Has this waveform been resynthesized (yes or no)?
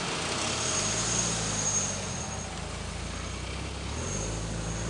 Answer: no